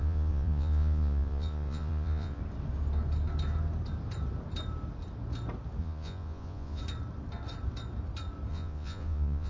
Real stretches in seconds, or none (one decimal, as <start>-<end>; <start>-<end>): 2.4-5.8; 6.8-8.5